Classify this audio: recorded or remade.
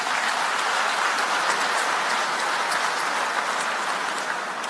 recorded